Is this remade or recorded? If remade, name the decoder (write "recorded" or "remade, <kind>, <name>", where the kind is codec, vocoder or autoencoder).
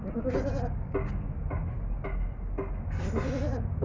recorded